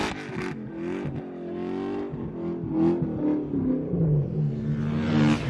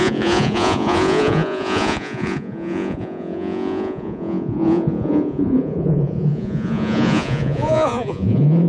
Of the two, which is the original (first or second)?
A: first